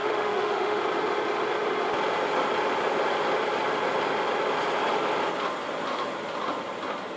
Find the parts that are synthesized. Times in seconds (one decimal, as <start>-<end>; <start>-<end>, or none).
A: 0.0-0.8